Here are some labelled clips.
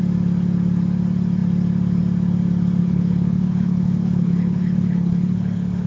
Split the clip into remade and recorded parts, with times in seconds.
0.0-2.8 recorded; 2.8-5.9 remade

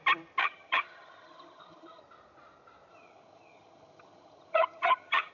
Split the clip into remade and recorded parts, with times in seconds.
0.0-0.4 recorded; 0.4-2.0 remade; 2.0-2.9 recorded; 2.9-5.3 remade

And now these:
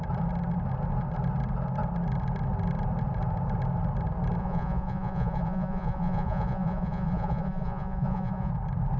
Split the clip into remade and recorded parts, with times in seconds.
0.0-4.4 recorded; 4.4-8.5 remade; 8.5-9.0 recorded

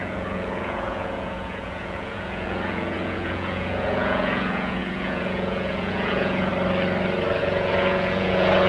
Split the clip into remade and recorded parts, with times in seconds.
0.0-6.5 remade; 6.5-7.4 recorded; 7.4-8.7 remade